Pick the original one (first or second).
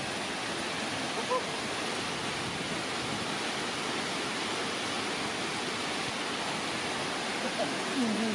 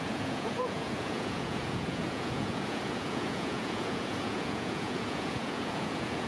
first